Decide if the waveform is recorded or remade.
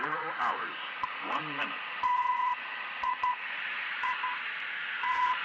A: remade